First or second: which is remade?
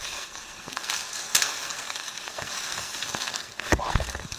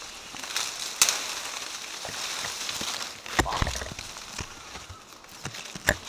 first